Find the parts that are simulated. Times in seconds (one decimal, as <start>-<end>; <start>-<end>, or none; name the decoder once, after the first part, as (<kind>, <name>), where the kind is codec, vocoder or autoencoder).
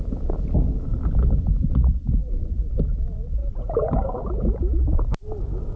0.9-2.7 (vocoder, BigVGAN v2)